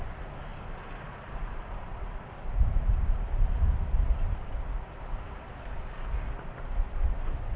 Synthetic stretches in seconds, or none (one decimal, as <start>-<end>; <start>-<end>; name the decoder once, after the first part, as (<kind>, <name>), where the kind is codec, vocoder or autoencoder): 0.5-4.5 (vocoder, BigVGAN v2)